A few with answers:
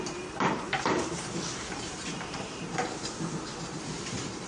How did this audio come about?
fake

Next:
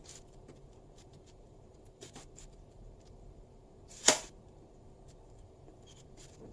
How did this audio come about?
fake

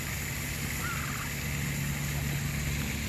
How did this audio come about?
real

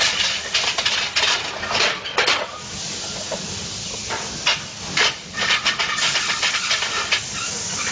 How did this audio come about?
fake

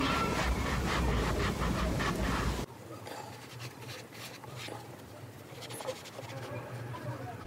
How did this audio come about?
real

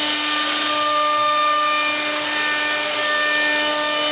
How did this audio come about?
real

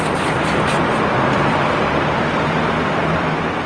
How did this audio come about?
fake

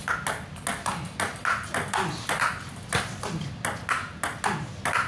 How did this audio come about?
real